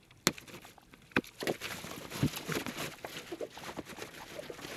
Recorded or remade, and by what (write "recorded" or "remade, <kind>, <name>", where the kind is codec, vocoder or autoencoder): recorded